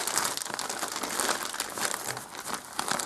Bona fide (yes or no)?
yes